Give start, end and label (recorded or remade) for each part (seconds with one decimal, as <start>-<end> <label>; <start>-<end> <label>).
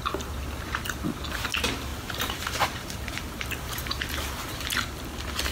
0.0-1.9 recorded; 1.9-4.7 remade; 4.7-5.5 recorded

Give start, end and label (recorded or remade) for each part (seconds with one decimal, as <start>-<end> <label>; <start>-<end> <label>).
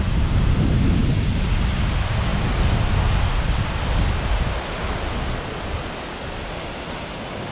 0.0-7.5 recorded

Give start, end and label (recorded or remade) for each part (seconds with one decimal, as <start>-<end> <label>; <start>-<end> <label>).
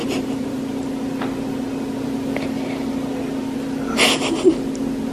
0.0-0.6 remade; 0.6-5.1 recorded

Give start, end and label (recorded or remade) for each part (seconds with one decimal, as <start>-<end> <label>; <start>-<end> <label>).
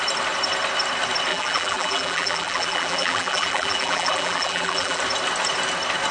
0.0-1.3 recorded; 1.3-5.0 remade; 5.0-6.1 recorded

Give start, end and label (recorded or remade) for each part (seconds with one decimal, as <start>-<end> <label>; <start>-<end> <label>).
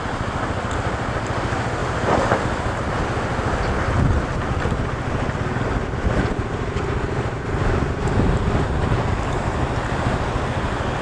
0.0-1.8 recorded; 1.8-2.4 remade; 2.4-4.3 recorded; 4.3-4.9 remade; 4.9-11.0 recorded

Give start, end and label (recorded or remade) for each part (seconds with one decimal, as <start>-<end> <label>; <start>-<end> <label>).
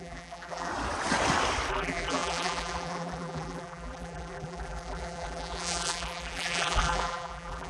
0.0-0.7 remade; 0.7-1.7 recorded; 1.7-7.7 remade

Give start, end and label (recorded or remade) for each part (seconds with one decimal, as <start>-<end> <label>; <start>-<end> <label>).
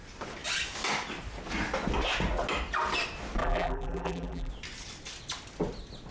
0.0-3.4 recorded; 3.4-4.5 remade; 4.5-6.1 recorded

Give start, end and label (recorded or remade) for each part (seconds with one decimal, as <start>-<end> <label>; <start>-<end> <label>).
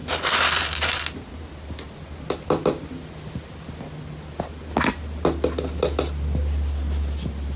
0.0-7.6 recorded